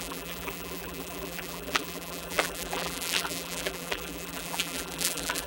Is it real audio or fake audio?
fake